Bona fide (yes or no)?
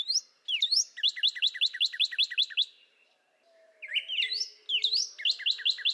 yes